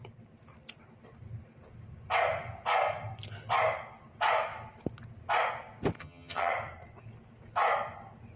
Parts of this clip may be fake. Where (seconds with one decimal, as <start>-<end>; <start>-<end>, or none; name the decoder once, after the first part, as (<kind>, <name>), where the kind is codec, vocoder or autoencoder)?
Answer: 6.0-6.5 (vocoder, HiFi-GAN)